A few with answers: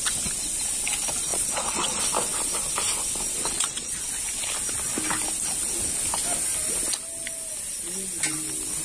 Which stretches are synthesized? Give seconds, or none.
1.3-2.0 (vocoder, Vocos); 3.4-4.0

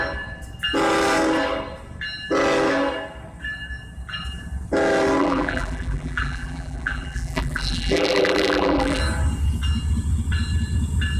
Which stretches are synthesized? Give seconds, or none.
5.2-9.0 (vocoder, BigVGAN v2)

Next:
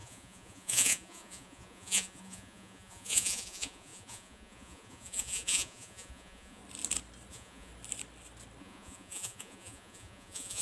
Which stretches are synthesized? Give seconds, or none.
0.0-6.6 (vocoder, Vocos); 7.3-7.7; 8.6-10.6